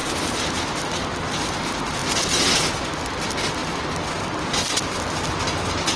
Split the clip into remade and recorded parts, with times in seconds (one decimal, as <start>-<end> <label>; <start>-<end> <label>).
0.0-0.8 remade; 0.8-6.0 recorded